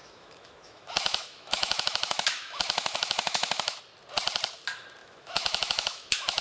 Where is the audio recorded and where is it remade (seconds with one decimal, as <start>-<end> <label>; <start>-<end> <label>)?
0.0-3.8 remade; 3.8-5.0 recorded; 5.0-6.4 remade